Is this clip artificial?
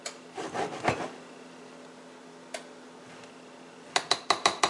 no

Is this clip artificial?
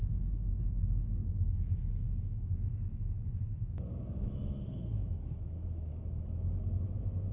yes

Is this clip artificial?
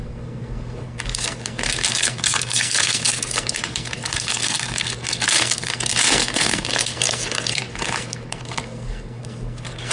yes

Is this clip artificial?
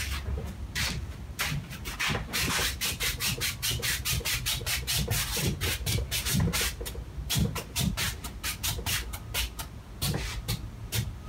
no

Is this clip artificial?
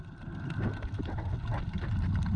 no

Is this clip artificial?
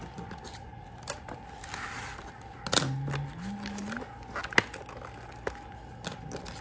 no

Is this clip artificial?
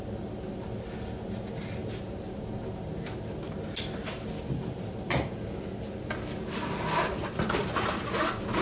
no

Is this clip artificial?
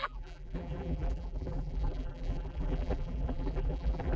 yes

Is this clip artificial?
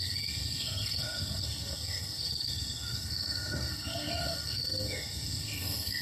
yes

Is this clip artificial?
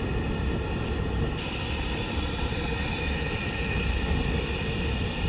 no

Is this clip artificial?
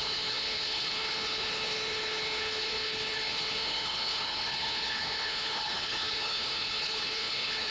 yes